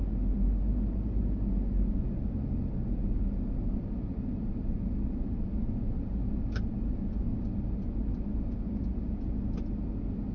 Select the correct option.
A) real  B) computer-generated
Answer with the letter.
A